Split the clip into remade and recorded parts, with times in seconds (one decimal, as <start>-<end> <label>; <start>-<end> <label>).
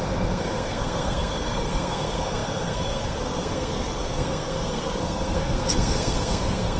0.0-6.8 remade